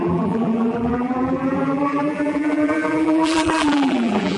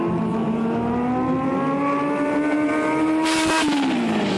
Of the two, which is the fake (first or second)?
first